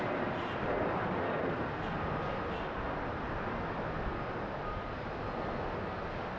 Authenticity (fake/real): real